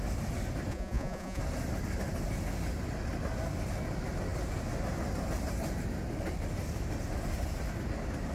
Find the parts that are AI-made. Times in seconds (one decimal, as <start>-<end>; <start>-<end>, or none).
0.7-1.4